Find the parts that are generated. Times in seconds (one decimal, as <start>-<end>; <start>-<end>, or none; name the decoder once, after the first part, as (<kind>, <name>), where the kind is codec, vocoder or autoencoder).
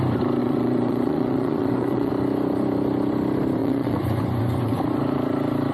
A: 0.4-2.1 (vocoder, Vocos); 3.6-4.8